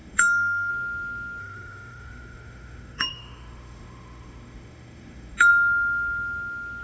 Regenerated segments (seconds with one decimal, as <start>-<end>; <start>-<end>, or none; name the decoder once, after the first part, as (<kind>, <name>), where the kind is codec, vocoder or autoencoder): 0.0-0.7 (autoencoder, DAC-VAE); 1.4-5.5